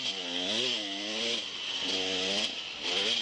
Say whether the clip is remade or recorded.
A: recorded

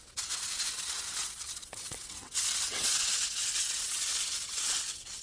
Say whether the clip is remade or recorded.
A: remade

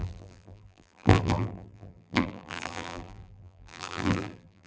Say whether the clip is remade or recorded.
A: remade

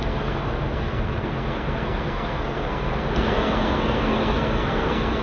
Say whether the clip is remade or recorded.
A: remade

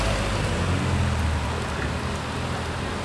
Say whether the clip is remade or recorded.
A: recorded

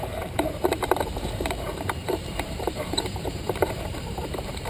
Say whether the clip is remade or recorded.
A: remade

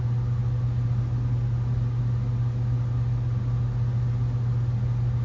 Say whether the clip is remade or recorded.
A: recorded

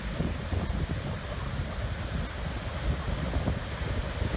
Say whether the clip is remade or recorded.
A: recorded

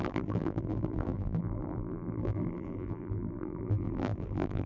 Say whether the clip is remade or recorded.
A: remade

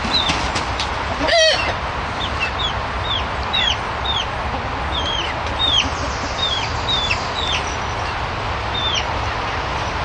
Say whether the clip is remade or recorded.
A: recorded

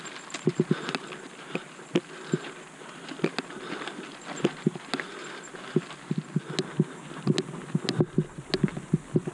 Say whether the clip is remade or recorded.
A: recorded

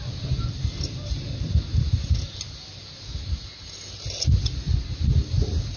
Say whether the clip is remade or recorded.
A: recorded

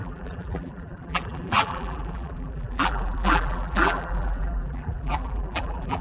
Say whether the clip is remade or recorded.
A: remade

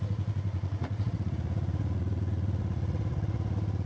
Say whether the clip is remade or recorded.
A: remade